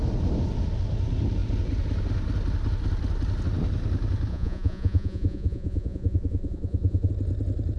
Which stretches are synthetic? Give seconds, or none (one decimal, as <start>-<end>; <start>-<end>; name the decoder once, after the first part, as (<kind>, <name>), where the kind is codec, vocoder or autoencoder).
4.3-7.1 (vocoder, Vocos)